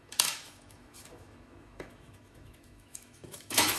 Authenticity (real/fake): fake